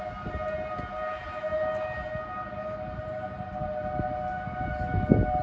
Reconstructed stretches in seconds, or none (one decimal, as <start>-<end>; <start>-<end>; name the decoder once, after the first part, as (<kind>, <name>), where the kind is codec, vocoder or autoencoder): none